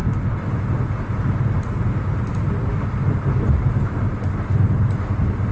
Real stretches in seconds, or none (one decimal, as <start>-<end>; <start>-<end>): 0.5-5.5